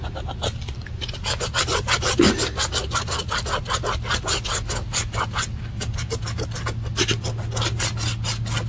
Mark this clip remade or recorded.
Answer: recorded